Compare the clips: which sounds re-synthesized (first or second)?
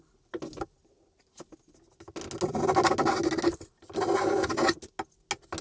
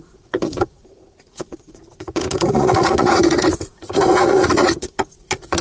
second